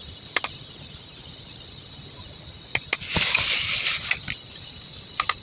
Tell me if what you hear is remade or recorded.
recorded